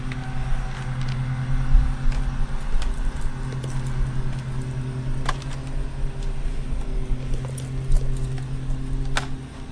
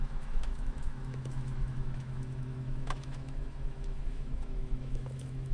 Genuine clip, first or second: first